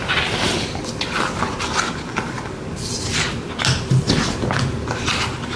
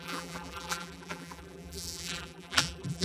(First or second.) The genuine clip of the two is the first